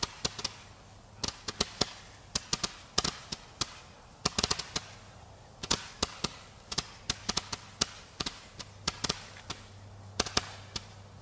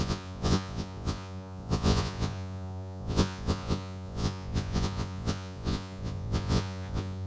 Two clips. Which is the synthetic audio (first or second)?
second